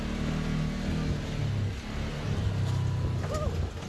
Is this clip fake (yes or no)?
no